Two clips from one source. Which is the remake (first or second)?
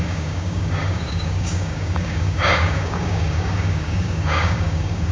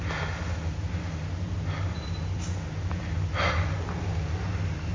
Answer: first